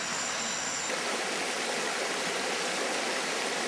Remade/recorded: recorded